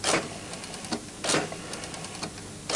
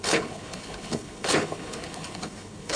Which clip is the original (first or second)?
first